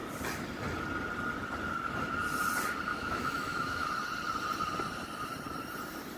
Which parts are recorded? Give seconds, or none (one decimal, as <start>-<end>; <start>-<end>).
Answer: 0.0-2.9; 3.9-6.2